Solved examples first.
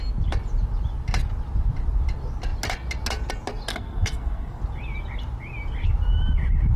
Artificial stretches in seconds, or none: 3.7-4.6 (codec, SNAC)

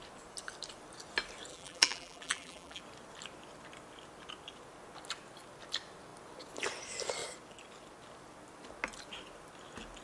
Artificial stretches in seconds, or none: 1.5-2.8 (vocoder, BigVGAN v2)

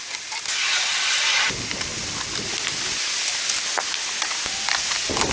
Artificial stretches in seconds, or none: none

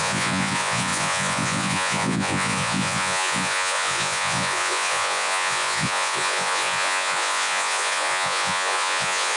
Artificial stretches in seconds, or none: 0.0-9.4 (vocoder, Vocos)

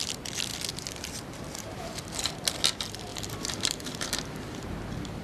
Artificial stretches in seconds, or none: 3.1-4.8 (vocoder, BigVGAN v2)

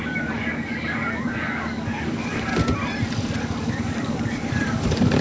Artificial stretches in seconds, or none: 0.0-2.5 (codec, DAC); 3.4-5.2

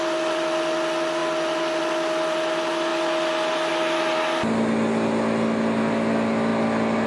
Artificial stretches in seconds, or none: none

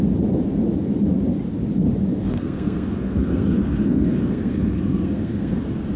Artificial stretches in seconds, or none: 2.2-5.6 (codec, SNAC)